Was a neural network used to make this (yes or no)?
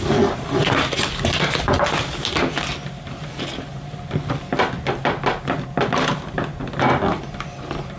no